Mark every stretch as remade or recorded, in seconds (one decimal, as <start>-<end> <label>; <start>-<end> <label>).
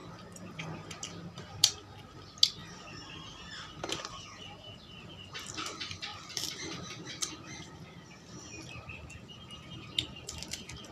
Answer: 0.0-6.1 recorded; 6.1-7.3 remade; 7.3-10.9 recorded